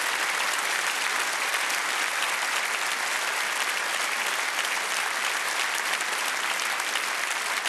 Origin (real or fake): real